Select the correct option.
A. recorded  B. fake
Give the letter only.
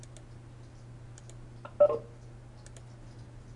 A